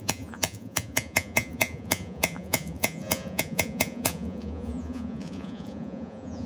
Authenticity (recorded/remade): remade